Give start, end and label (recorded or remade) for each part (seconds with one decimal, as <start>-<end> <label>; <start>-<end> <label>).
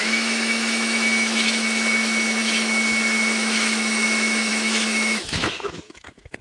0.0-6.4 remade